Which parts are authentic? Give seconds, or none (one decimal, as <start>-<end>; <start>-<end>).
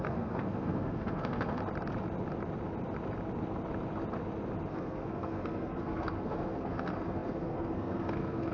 1.6-4.7